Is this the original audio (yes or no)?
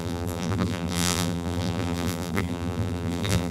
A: no